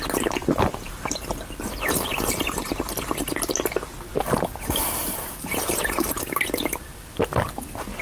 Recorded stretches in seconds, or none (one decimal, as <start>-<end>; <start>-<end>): 0.0-0.4; 3.0-4.1; 4.8-8.0